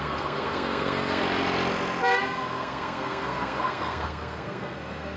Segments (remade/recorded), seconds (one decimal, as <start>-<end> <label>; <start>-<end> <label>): 0.0-1.2 remade; 1.2-2.2 recorded; 2.2-5.2 remade